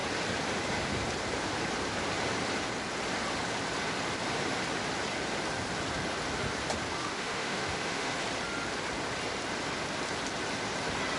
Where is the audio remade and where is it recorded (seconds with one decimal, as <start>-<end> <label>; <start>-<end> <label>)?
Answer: 0.0-7.0 recorded; 7.0-8.1 remade; 8.1-11.2 recorded